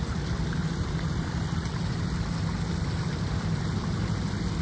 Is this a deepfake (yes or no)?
no